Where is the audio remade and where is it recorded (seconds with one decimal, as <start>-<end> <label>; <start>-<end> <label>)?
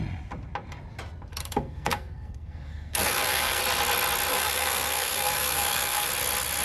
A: 0.0-1.3 recorded; 1.3-3.6 remade; 3.6-4.3 recorded; 4.3-6.1 remade; 6.1-6.6 recorded